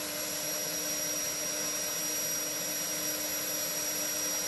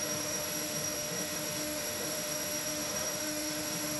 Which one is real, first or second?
first